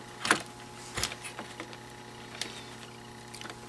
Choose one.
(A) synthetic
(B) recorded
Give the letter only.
B